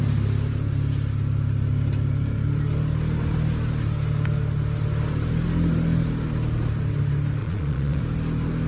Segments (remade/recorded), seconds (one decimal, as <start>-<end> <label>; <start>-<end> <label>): 0.0-7.4 recorded; 7.4-8.0 remade; 8.0-8.7 recorded